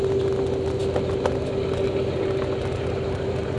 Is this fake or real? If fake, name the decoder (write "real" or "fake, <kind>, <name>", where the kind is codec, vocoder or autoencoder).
real